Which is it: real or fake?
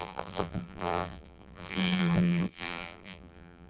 fake